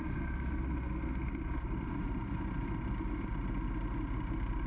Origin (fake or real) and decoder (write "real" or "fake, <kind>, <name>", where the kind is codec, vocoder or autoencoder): real